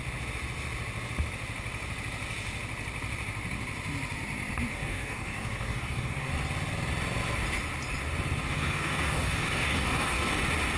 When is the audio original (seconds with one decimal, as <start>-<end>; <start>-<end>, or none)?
0.0-4.7; 6.3-8.4; 10.3-10.8